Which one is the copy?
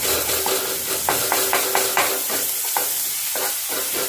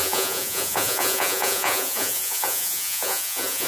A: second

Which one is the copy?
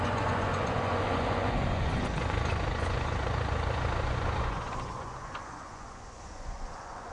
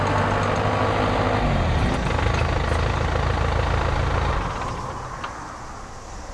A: first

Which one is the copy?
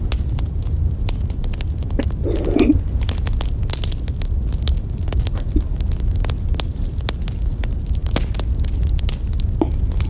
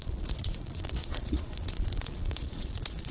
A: second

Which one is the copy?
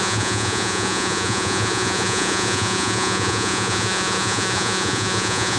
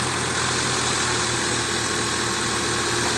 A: first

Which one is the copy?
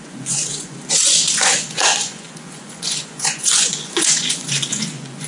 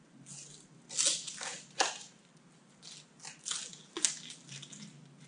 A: first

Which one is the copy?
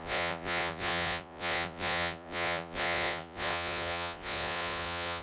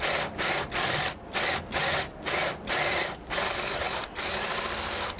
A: first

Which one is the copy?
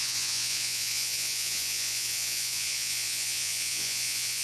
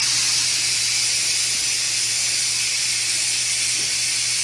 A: first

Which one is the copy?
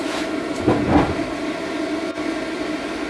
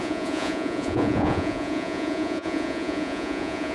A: second